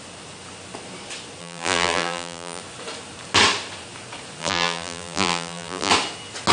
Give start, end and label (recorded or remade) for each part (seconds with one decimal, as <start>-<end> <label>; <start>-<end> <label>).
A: 0.0-1.4 recorded; 1.4-2.6 remade; 2.6-4.4 recorded; 4.4-5.9 remade; 5.9-6.5 recorded

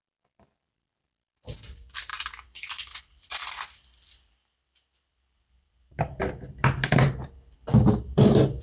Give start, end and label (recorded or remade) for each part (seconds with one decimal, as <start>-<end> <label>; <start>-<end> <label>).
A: 0.0-8.6 recorded

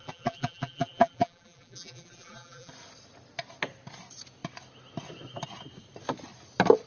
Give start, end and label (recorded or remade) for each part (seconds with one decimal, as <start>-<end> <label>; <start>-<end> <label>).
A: 0.0-2.7 remade; 2.7-6.9 recorded

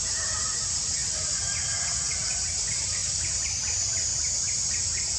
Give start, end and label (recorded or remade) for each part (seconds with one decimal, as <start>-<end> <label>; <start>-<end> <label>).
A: 0.0-3.0 recorded; 3.0-3.6 remade; 3.6-4.1 recorded; 4.1-5.2 remade

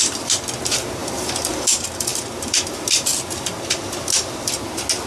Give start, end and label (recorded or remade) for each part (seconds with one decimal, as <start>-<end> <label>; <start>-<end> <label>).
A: 0.0-1.0 recorded; 1.0-1.7 remade; 1.7-2.1 recorded; 2.1-2.6 remade; 2.6-3.1 recorded; 3.1-4.5 remade; 4.5-5.1 recorded

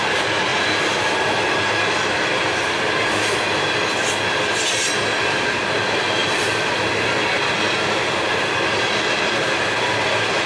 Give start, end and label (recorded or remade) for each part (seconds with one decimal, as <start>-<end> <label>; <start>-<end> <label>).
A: 0.0-0.5 remade; 0.5-5.4 recorded; 5.4-10.5 remade

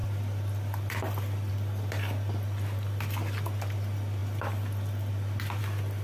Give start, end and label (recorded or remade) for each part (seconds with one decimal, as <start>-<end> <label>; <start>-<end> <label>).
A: 0.0-6.0 recorded